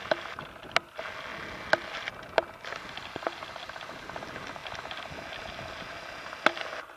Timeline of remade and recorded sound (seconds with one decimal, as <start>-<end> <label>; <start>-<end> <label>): 0.0-7.0 recorded